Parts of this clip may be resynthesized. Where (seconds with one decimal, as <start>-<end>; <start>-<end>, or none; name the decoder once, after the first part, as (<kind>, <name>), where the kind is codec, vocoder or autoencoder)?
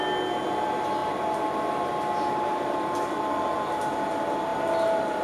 1.0-4.1 (vocoder, BigVGAN v2); 4.5-5.2